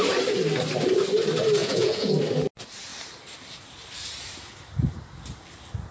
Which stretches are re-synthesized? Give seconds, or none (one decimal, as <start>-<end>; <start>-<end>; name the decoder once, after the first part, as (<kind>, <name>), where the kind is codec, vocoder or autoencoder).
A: 1.6-2.2 (vocoder, Vocos)